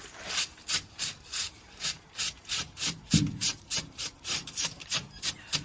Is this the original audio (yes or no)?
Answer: no